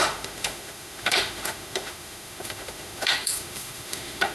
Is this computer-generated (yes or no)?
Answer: yes